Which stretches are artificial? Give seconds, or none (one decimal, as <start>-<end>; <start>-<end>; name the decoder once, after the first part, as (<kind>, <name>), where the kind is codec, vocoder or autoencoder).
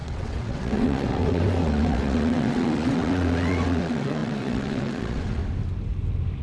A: 0.0-5.4 (vocoder, WaveNeXt)